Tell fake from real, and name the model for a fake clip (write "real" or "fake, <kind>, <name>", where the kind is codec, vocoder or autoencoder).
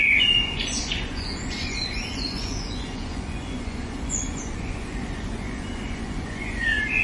fake, vocoder, Vocos